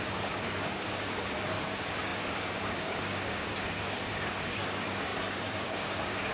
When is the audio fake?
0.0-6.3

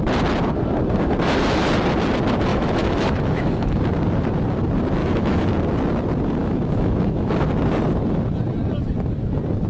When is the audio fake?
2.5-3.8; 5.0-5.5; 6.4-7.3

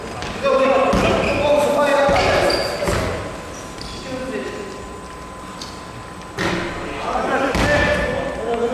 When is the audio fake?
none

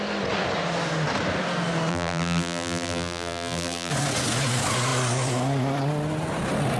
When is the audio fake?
1.9-3.9

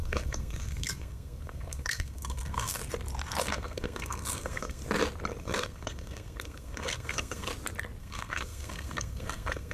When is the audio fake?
0.0-2.8; 3.4-4.8; 5.4-7.5; 8.0-9.7

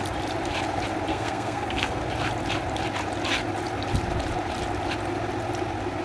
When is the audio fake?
1.1-2.0

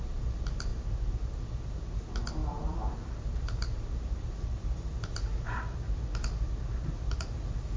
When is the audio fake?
none